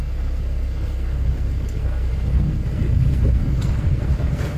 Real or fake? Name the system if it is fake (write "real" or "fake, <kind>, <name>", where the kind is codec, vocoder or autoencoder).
fake, codec, SNAC